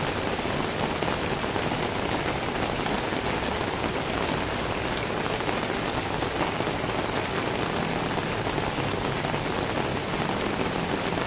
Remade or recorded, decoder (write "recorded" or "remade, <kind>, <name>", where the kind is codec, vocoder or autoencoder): recorded